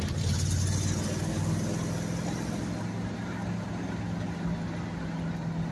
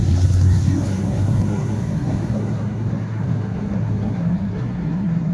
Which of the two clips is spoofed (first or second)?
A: second